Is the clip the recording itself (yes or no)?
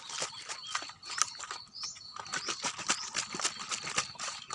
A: yes